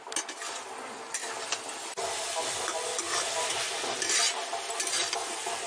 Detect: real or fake real